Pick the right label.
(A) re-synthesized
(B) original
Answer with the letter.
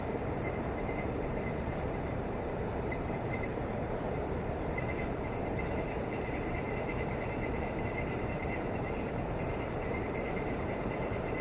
A